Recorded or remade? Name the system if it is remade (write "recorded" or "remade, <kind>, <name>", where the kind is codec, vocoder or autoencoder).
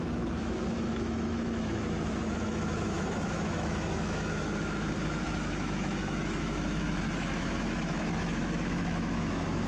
remade, autoencoder, DAC-VAE